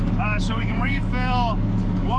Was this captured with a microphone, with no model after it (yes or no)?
no